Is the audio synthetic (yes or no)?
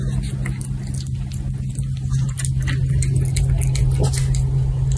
no